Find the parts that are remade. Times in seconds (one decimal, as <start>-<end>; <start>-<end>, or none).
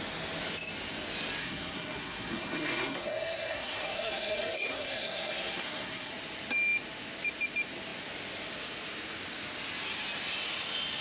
1.4-6.1